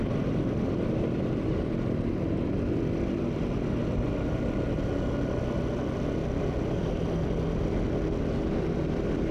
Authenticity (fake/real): real